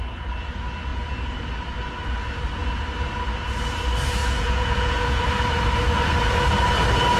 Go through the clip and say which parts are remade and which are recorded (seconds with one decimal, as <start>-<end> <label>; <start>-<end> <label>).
0.0-4.2 recorded; 4.2-5.2 remade; 5.2-7.2 recorded